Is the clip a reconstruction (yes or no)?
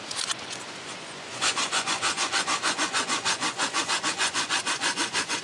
yes